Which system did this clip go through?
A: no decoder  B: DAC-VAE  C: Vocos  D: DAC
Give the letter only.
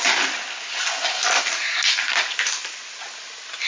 A